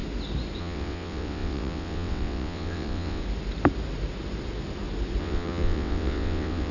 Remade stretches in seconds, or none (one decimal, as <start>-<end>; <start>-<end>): 0.6-3.2; 5.2-6.7